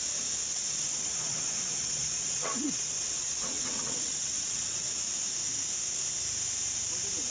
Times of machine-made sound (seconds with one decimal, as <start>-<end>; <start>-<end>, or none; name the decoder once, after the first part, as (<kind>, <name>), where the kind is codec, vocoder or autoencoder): 0.5-4.9 (vocoder, WaveNeXt)